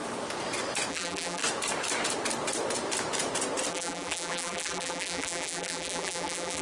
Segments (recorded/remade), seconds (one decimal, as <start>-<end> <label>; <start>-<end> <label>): 0.0-0.9 recorded; 0.9-1.4 remade; 1.4-3.7 recorded; 3.7-6.6 remade